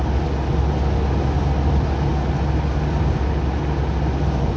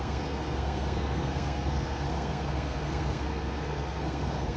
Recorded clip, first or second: first